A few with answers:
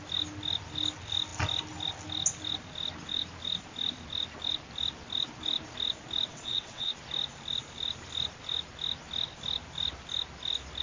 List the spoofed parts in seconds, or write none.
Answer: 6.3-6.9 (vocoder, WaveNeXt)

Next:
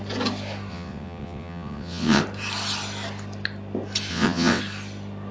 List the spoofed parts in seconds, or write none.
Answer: 0.7-2.2 (vocoder, WaveNeXt); 4.1-4.6

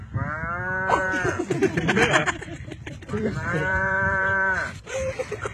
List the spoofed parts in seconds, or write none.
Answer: 1.6-4.9 (vocoder, BigVGAN v2)

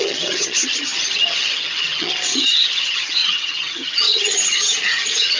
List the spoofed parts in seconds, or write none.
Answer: 0.0-5.4 (vocoder, HiFi-GAN)

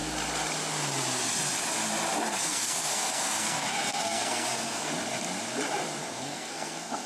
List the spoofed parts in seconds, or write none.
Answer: 2.3-4.9 (codec, SNAC); 6.0-7.1

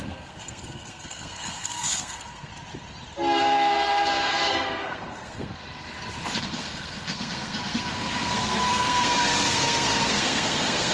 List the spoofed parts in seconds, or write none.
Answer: 0.0-2.5 (codec, SNAC); 3.4-5.6; 6.4-10.9